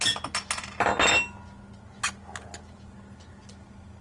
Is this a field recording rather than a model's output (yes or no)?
yes